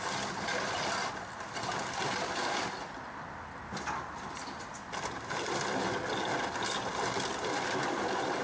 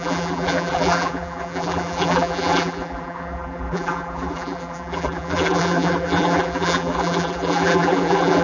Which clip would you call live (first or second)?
first